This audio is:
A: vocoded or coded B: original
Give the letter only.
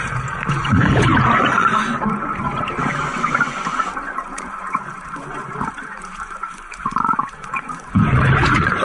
A